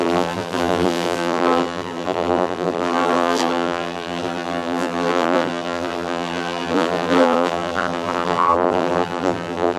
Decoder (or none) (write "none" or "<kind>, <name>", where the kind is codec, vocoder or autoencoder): vocoder, BigVGAN v2